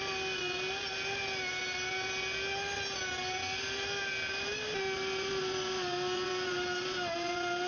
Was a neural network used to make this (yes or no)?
no